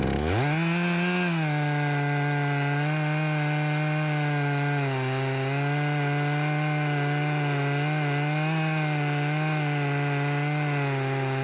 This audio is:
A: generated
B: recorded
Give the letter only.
B